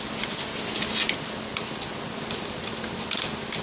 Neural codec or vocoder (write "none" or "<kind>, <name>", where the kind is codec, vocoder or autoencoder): none